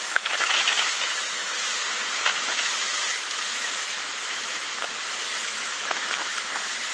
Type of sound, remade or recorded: remade